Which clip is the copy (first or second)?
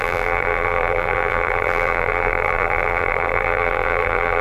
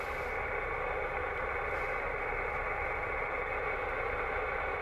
first